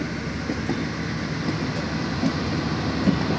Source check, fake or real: real